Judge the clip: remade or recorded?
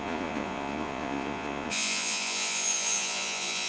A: remade